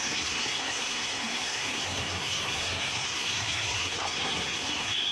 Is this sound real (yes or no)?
no